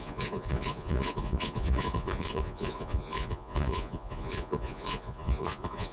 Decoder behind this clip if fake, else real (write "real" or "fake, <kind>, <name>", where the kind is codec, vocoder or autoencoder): fake, vocoder, Vocos